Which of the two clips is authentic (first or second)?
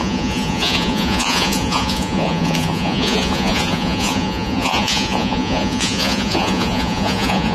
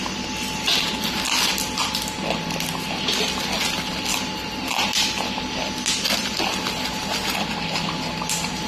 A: second